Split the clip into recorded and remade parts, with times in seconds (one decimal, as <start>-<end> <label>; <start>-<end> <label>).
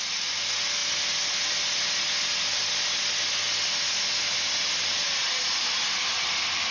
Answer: 0.0-6.7 recorded